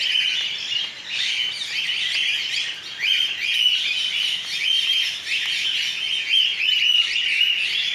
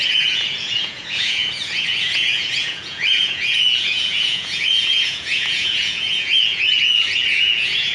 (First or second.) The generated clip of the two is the second